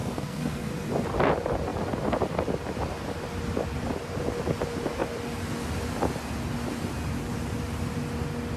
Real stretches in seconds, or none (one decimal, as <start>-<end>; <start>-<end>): 0.7-8.6